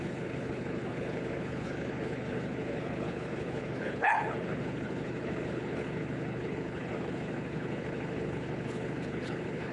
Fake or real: fake